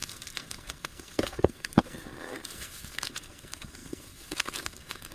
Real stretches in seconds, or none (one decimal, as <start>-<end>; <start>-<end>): none